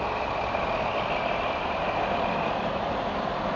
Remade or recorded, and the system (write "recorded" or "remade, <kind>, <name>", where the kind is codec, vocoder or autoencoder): recorded